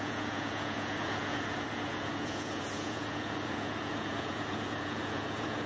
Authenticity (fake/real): fake